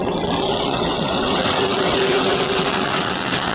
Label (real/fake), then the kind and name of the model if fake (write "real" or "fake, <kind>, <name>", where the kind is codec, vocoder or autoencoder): fake, vocoder, WaveNeXt